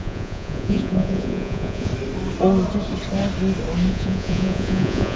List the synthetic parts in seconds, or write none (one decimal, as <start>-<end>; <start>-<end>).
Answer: 0.0-1.9; 3.9-5.2